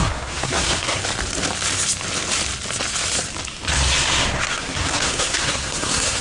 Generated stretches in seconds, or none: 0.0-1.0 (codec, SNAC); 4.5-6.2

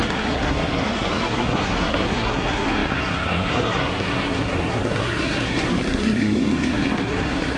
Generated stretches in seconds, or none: 0.0-7.6 (codec, SNAC)